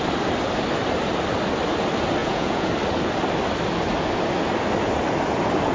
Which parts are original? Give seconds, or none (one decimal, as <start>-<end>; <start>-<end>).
0.0-2.2; 2.7-5.7